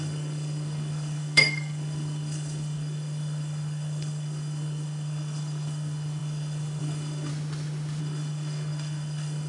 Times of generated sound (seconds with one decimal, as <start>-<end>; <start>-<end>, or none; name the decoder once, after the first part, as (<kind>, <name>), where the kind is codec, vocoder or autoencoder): 0.0-7.3 (codec, SNAC); 8.0-9.5